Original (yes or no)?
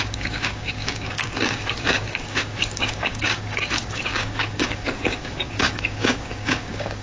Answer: no